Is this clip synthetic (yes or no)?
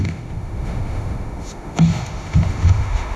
yes